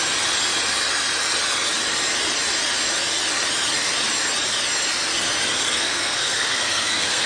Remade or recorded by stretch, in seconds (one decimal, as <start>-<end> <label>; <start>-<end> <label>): 0.0-5.6 recorded; 5.6-7.3 remade